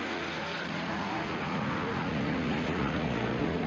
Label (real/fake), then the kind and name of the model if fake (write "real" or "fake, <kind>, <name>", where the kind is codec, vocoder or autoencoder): fake, vocoder, Vocos